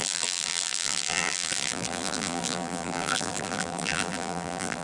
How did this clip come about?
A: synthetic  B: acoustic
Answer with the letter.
A